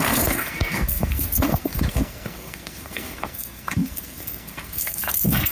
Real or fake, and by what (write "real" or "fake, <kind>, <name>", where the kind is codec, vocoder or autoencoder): fake, codec, SNAC